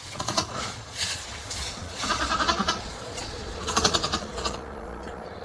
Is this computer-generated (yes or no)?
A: yes